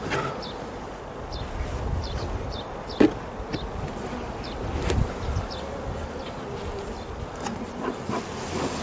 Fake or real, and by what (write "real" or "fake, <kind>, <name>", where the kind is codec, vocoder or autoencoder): real